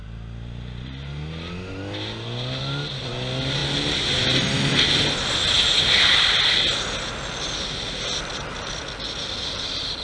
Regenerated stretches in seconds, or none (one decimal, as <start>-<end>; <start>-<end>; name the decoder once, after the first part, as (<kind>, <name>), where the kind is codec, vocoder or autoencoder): none